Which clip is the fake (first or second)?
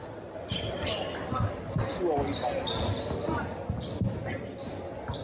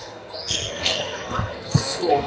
second